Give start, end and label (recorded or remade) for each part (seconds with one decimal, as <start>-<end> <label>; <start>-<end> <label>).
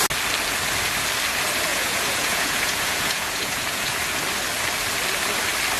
0.0-1.7 recorded; 1.7-4.0 remade; 4.0-5.8 recorded